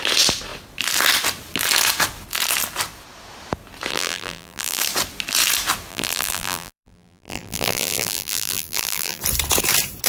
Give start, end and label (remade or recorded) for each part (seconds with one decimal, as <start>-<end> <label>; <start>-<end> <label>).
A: 0.0-3.9 recorded; 3.9-4.8 remade; 4.8-5.9 recorded; 5.9-9.2 remade; 9.2-10.1 recorded